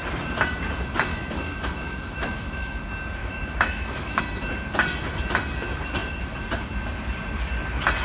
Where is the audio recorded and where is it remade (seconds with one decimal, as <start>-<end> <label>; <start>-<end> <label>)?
0.0-1.1 recorded; 1.1-2.8 remade; 2.8-3.2 recorded; 3.2-4.2 remade; 4.2-8.0 recorded